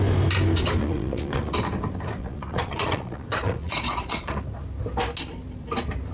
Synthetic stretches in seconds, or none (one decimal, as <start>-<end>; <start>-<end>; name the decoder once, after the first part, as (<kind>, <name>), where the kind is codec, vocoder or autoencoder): 0.8-1.5 (vocoder, Vocos); 2.2-4.4